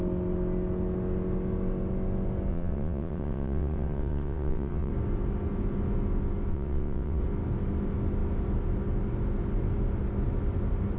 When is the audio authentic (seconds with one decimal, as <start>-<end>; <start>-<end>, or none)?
0.0-2.5; 4.9-6.5; 7.2-11.0